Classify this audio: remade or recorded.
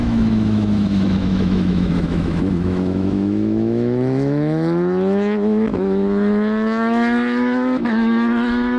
remade